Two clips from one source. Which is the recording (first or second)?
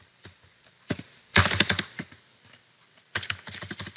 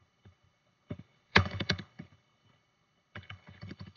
first